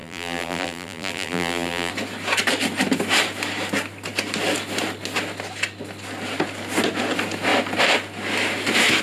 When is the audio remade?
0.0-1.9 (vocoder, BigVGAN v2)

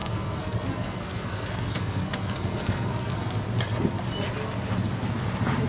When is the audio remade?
0.0-3.4 (codec, SNAC)

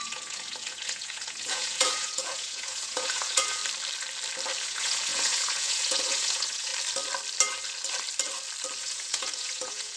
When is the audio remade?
0.0-3.6 (vocoder, Vocos); 4.6-6.7; 8.8-10.0

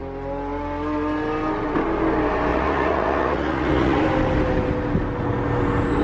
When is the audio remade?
2.5-4.0 (vocoder, Vocos)

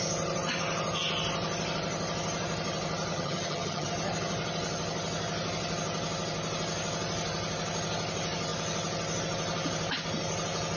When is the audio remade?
3.1-3.9 (vocoder, HiFi-GAN)

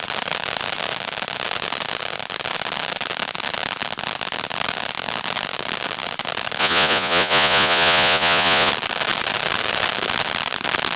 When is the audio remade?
6.6-8.7 (vocoder, Vocos)

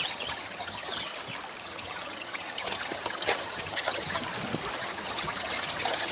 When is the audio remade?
0.0-1.1 (vocoder, HiFi-GAN); 1.6-4.2; 4.8-6.1

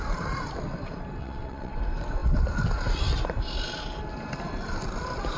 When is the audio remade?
1.2-1.8 (vocoder, WaveNeXt)